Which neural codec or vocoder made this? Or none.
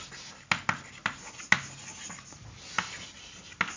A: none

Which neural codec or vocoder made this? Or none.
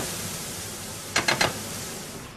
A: none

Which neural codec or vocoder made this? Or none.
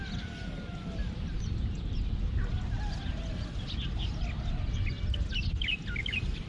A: none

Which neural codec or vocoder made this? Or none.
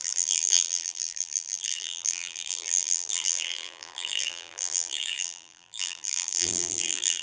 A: vocoder, BigVGAN v2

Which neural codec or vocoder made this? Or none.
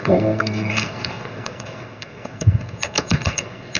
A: codec, SNAC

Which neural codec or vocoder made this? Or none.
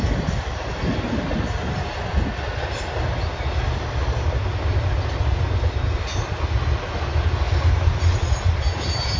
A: none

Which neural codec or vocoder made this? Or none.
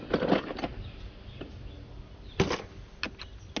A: none